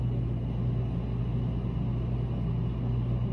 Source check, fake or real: real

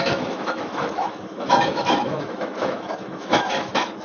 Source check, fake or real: fake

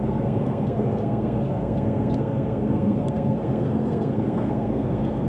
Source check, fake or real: fake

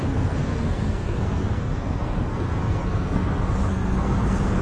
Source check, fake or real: fake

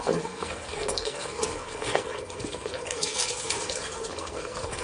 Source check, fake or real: fake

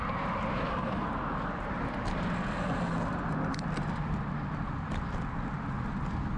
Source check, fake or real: real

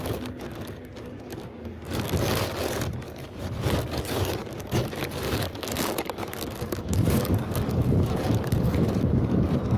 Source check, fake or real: fake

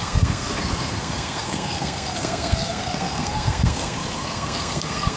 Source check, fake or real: fake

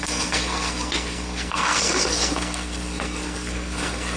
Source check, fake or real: fake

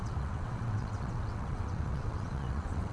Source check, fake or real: fake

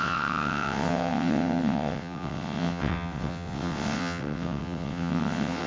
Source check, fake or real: fake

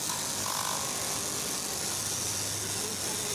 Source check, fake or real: real